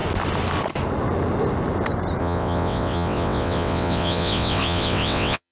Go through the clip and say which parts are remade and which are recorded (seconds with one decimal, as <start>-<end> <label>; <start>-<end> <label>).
0.0-2.2 recorded; 2.2-5.5 remade